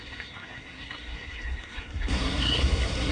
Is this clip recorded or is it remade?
remade